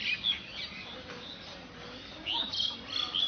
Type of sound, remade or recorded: recorded